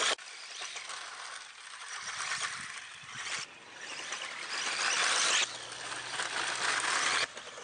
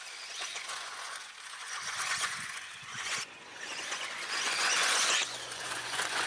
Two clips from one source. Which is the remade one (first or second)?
second